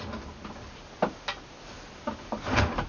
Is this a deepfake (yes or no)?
no